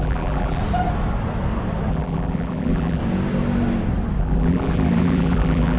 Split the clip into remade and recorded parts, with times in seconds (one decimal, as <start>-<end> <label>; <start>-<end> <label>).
0.0-0.6 remade; 0.6-1.9 recorded; 1.9-3.0 remade; 3.0-4.2 recorded; 4.2-5.8 remade